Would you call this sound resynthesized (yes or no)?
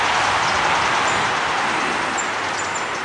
no